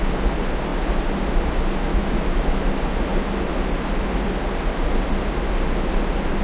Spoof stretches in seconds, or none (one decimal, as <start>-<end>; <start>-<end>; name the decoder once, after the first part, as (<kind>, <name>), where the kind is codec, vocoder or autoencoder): 1.9-2.7 (autoencoder, DAC-VAE)

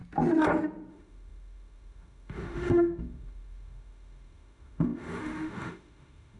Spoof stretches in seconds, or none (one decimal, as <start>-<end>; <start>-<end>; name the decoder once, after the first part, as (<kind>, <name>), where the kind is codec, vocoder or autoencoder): 0.9-6.4 (autoencoder, DAC-VAE)

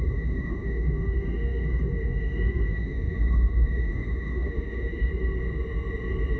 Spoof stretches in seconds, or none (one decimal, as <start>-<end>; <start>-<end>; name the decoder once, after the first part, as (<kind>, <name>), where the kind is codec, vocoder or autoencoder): 0.0-5.1 (autoencoder, DAC-VAE)